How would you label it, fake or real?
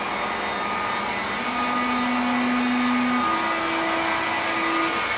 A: real